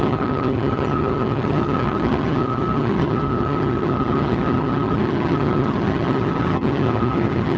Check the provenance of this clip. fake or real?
fake